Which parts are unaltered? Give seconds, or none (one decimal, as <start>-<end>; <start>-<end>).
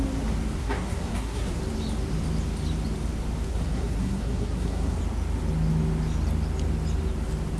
0.0-0.6; 1.6-3.5; 5.0-7.6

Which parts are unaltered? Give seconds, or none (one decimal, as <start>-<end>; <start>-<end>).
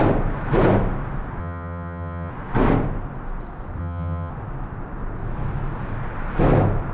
0.0-1.4; 2.3-3.8; 4.3-6.9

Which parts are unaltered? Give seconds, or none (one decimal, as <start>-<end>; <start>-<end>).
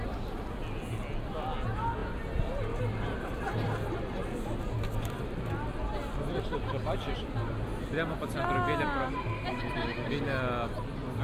0.0-11.2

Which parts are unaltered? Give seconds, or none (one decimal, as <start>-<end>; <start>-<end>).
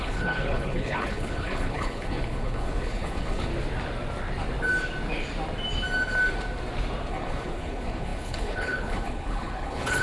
3.5-7.1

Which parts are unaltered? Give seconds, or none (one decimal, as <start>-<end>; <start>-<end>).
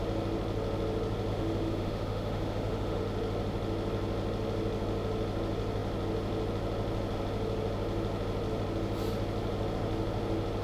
0.0-1.3; 3.0-10.6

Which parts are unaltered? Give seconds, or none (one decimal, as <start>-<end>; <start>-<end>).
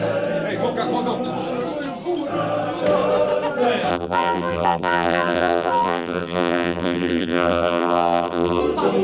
0.0-3.9; 8.6-9.0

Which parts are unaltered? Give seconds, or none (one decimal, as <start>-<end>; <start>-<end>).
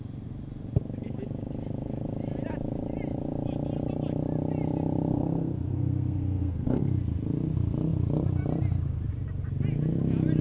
0.0-5.1; 6.9-10.4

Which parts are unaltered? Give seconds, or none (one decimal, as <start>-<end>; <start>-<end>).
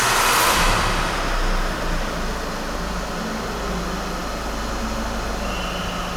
0.0-6.2